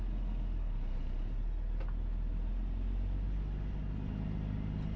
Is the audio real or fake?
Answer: real